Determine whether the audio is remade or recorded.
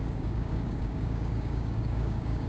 remade